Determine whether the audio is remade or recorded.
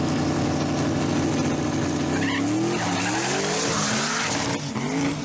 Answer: recorded